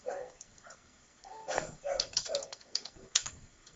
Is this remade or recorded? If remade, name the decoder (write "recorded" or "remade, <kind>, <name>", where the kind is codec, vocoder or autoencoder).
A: remade, codec, SNAC